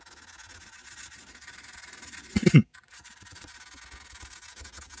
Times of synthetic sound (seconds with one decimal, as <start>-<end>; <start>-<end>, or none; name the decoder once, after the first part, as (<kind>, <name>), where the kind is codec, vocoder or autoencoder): 0.6-3.6 (vocoder, Vocos)